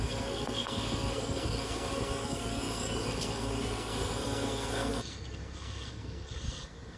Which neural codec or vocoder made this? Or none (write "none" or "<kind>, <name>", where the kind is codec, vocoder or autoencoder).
codec, SNAC